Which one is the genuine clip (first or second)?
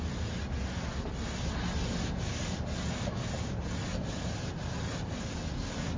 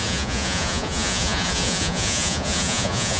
first